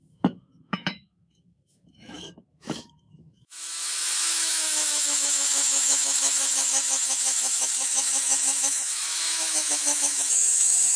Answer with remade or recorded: remade